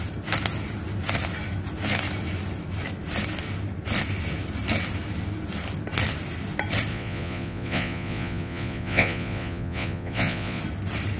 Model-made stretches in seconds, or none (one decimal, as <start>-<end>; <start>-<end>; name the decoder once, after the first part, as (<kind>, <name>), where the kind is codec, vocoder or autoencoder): 6.9-10.6 (vocoder, Vocos)